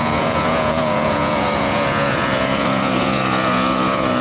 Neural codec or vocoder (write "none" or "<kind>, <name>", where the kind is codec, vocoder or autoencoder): vocoder, Vocos